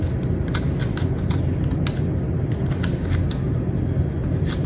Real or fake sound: real